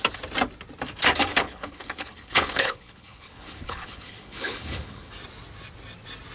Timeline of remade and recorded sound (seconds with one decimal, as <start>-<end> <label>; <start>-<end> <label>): 0.0-1.3 recorded; 1.3-5.1 remade; 5.1-6.3 recorded